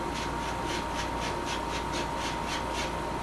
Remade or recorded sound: recorded